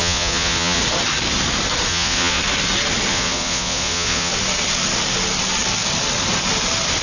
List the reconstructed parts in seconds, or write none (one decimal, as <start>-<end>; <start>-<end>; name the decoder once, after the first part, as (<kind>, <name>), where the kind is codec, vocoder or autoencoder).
0.0-0.8 (vocoder, Vocos); 1.9-2.4; 3.1-4.3